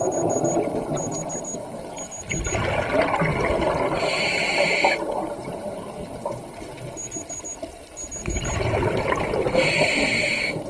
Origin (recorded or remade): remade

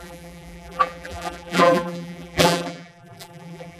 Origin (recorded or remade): remade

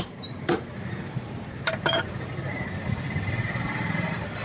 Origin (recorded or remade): remade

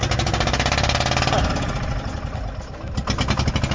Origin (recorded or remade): recorded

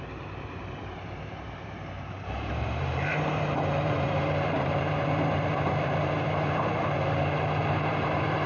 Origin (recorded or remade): remade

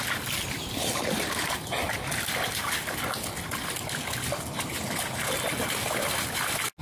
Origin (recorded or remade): recorded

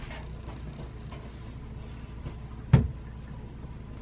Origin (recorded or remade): recorded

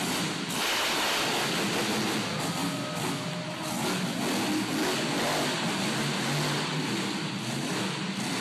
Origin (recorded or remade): recorded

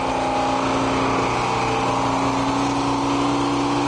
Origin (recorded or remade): recorded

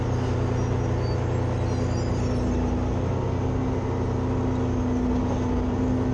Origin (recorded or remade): recorded